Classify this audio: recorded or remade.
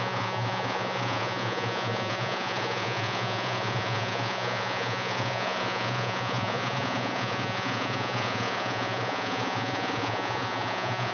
remade